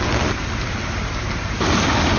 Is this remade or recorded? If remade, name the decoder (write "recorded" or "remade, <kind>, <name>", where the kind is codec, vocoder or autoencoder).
recorded